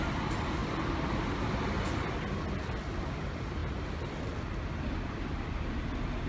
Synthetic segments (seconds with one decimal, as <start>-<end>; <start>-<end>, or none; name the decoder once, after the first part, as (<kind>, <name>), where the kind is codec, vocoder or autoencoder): none